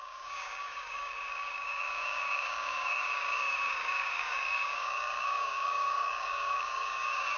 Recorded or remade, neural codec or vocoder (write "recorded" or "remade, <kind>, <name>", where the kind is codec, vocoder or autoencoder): remade, codec, DAC